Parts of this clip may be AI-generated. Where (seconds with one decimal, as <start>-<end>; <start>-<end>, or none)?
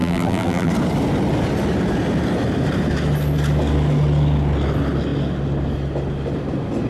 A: 0.0-0.7